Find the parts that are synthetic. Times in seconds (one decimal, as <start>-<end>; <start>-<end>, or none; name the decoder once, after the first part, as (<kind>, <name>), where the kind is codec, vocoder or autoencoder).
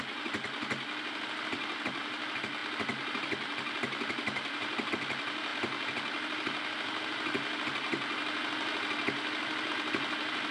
none